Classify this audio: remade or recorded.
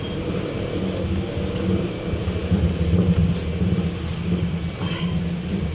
recorded